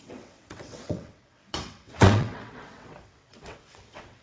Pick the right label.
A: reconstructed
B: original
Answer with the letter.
A